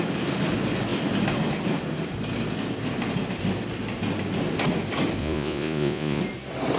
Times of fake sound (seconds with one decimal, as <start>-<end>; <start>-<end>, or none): 5.2-6.2